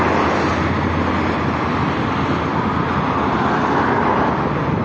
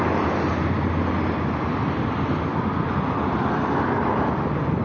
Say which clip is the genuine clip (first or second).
first